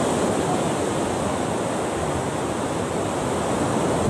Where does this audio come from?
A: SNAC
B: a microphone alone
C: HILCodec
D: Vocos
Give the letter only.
B